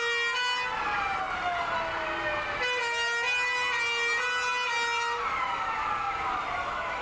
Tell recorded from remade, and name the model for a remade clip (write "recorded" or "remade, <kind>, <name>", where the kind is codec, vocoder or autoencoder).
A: recorded